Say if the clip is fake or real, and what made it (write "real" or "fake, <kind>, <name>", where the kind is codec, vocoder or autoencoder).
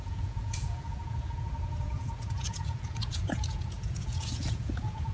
fake, vocoder, Vocos